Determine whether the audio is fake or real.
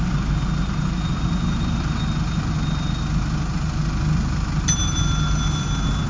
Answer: real